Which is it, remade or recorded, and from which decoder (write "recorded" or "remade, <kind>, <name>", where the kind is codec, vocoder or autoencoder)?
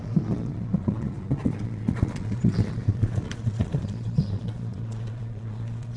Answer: remade, vocoder, Vocos